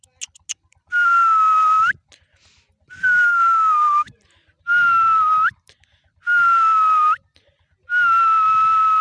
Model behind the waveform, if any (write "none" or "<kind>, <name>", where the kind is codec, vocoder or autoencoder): none